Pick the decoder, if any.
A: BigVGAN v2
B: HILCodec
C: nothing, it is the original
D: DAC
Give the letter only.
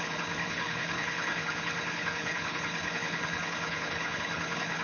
B